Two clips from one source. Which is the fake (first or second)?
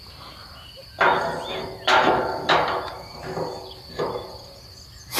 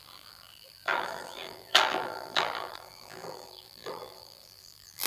second